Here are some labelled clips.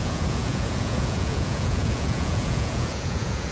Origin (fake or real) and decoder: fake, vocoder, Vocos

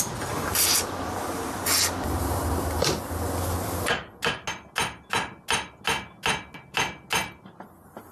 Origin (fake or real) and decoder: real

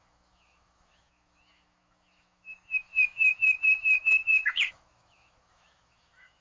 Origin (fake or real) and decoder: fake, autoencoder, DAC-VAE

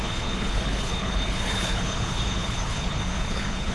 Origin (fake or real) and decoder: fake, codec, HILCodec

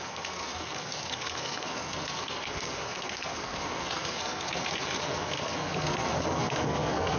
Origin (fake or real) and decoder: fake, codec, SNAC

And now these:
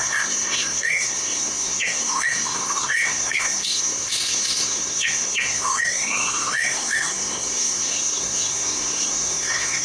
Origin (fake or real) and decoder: fake, codec, SNAC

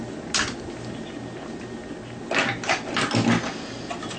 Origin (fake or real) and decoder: real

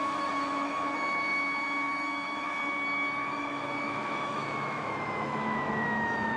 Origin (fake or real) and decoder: fake, autoencoder, DAC-VAE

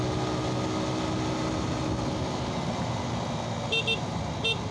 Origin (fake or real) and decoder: real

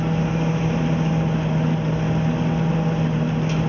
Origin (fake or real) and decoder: real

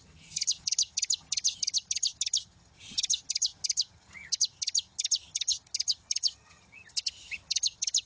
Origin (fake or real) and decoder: fake, vocoder, HiFi-GAN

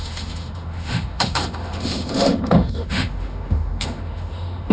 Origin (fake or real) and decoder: fake, autoencoder, DAC-VAE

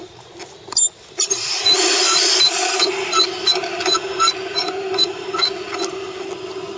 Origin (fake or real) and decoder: real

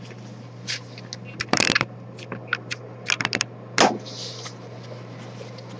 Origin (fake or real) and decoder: real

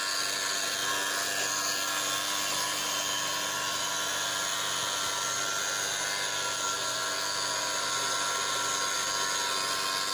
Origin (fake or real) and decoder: real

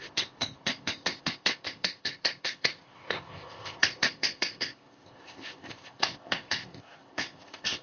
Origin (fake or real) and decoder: fake, codec, ZipCodec